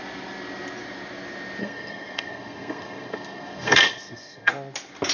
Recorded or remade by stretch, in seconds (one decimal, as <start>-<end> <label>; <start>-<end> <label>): 0.0-1.6 recorded; 1.6-4.5 remade; 4.5-5.1 recorded